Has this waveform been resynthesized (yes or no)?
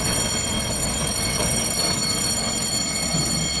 yes